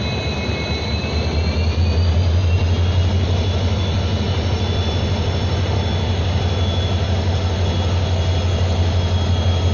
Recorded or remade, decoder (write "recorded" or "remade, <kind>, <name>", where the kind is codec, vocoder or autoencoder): recorded